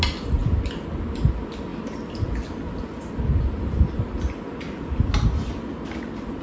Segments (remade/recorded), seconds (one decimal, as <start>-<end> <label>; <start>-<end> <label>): 0.0-6.4 recorded